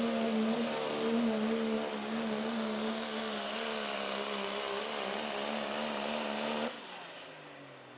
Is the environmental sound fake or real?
real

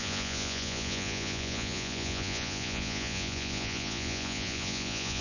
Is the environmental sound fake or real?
fake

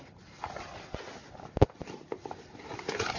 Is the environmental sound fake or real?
real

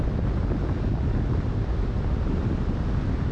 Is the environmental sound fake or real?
real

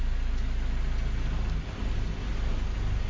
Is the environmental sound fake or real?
real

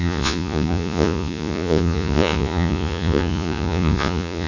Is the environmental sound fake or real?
fake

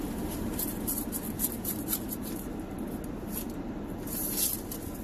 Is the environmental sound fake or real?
real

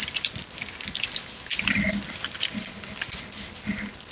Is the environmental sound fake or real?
real